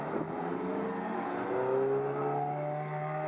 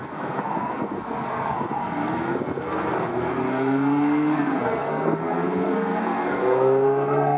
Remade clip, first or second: second